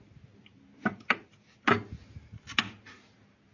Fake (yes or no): no